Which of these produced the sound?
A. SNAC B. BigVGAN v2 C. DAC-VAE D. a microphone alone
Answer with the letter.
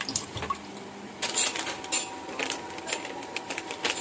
D